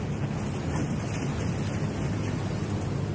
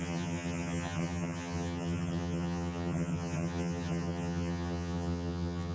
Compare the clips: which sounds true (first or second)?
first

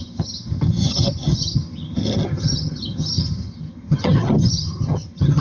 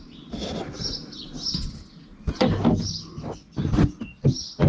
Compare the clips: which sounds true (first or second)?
second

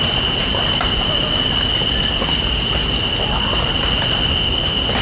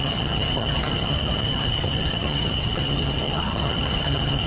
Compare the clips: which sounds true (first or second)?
first